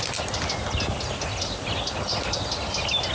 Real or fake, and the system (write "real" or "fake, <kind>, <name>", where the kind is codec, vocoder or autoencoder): real